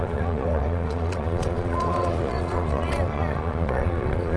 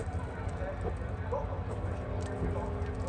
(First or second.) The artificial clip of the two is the first